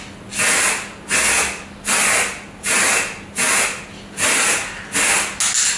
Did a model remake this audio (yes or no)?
no